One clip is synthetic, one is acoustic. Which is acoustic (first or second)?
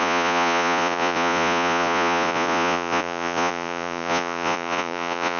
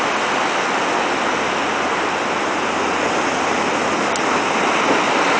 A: second